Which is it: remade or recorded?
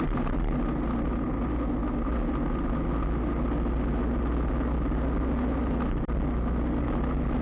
recorded